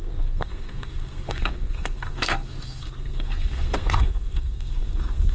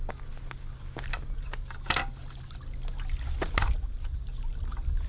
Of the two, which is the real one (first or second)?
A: second